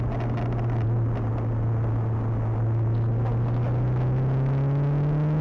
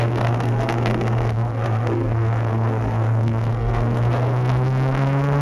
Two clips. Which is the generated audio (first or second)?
second